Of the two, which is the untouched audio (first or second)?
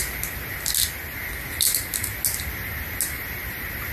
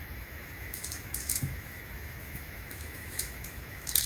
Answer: first